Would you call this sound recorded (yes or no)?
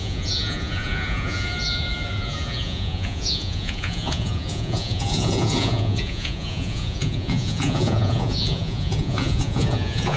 no